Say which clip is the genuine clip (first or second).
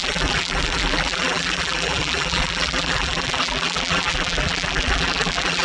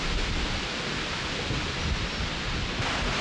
second